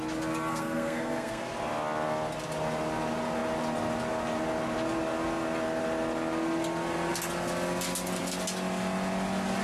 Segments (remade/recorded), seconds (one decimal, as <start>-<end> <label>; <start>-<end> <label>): 0.0-0.5 recorded; 0.5-1.4 remade; 1.4-9.6 recorded